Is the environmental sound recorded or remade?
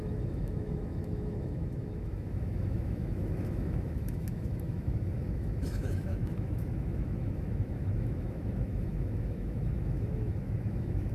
remade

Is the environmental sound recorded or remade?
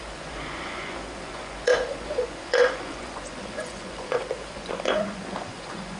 remade